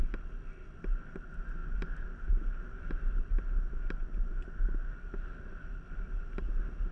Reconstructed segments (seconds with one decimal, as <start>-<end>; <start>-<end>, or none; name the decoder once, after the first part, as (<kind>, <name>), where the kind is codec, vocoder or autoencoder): none